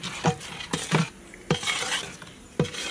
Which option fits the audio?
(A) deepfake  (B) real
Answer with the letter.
B